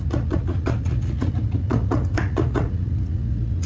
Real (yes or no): no